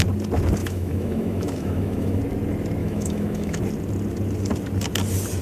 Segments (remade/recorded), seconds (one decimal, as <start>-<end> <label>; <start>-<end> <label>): 0.0-0.6 recorded; 0.6-2.2 remade; 2.2-2.8 recorded; 2.8-3.6 remade; 3.6-5.4 recorded